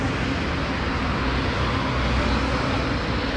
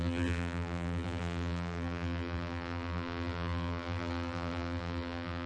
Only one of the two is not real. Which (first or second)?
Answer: second